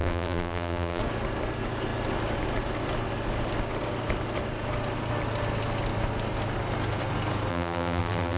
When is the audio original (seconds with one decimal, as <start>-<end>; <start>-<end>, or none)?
1.0-7.5